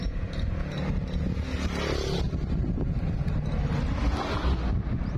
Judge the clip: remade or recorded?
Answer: recorded